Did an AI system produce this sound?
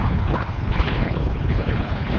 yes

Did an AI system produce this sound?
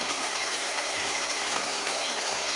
yes